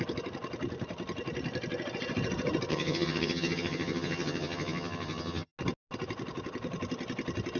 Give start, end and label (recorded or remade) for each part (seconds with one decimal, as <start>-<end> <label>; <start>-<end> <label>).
0.0-2.7 recorded; 2.7-5.5 remade; 5.5-7.6 recorded